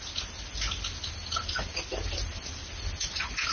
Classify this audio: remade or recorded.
recorded